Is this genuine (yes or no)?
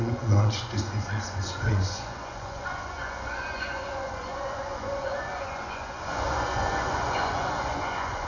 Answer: no